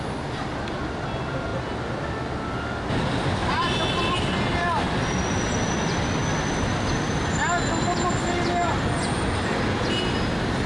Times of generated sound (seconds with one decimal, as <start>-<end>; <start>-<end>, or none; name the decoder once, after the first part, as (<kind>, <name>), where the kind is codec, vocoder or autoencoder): none